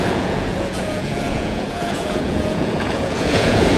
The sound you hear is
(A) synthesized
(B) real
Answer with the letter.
A